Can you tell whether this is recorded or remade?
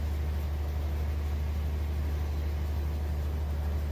recorded